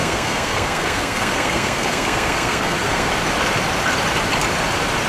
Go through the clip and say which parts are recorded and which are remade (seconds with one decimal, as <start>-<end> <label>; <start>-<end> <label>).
0.0-3.1 remade; 3.1-5.1 recorded